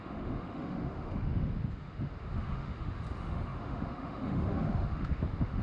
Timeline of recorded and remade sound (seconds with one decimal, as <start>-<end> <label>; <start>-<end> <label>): 0.0-5.6 remade